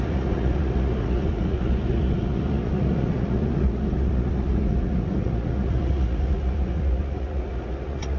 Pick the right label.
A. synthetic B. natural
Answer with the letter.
A